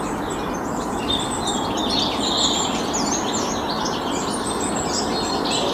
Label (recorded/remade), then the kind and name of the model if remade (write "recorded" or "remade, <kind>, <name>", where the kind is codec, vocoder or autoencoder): recorded